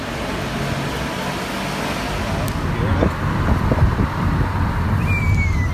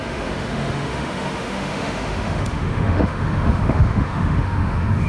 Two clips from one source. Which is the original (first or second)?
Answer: first